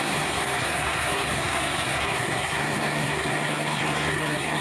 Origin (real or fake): fake